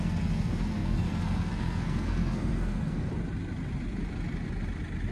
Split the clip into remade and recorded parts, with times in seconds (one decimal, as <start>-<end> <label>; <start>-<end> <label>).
0.0-3.1 remade; 3.1-5.1 recorded